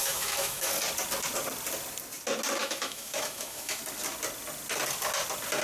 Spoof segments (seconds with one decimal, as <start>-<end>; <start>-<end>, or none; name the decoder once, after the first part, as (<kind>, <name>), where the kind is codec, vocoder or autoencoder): 0.0-0.7 (autoencoder, DAC-VAE); 2.6-3.8